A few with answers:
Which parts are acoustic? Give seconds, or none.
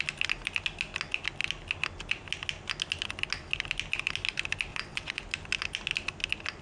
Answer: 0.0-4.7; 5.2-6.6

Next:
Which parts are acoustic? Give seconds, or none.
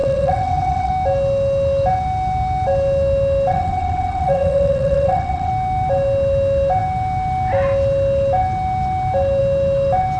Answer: 0.9-3.5; 5.5-10.2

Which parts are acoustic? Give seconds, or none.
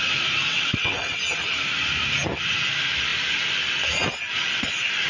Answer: 0.0-0.5; 1.1-5.1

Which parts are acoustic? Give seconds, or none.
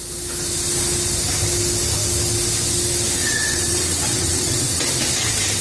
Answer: 0.0-3.2; 4.8-5.6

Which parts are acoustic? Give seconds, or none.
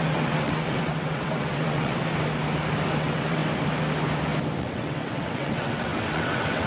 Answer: 2.1-3.0; 3.4-4.6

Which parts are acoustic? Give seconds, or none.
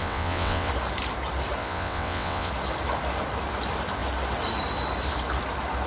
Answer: 0.7-1.6; 2.5-5.9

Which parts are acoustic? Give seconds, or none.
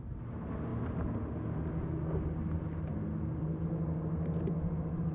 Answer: 0.0-5.1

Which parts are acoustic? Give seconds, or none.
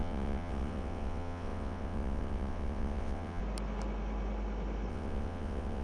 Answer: 3.4-4.9